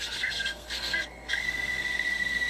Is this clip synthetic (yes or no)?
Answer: yes